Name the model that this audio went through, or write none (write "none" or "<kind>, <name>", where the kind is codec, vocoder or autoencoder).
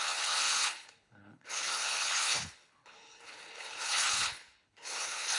codec, HILCodec